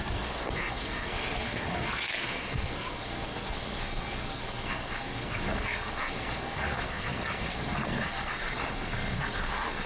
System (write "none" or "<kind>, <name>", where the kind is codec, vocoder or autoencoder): codec, SNAC